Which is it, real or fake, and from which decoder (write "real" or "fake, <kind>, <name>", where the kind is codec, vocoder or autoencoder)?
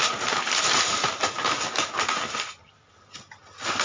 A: real